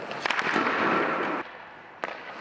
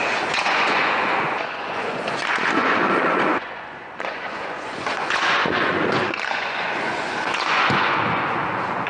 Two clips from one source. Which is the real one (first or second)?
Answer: first